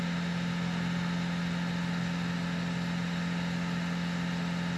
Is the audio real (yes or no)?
yes